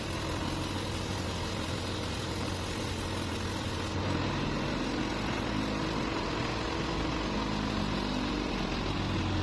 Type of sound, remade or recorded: recorded